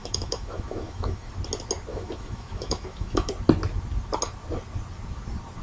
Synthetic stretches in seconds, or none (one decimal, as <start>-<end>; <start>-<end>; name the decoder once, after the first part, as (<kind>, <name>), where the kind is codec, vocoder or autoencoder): 0.0-1.3 (autoencoder, DAC-VAE); 1.9-3.3